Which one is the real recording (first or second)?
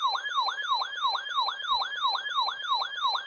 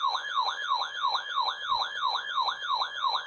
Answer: first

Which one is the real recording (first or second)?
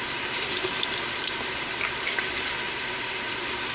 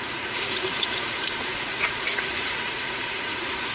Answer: first